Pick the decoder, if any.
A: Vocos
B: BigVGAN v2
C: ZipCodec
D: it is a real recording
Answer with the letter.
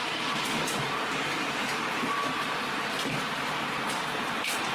B